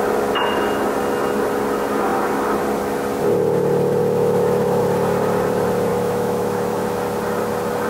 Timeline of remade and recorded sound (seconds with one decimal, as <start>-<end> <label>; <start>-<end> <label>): 0.0-4.0 recorded; 4.0-4.8 remade; 4.8-5.9 recorded; 5.9-6.8 remade; 6.8-7.9 recorded